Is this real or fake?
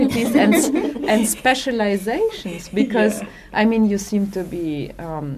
real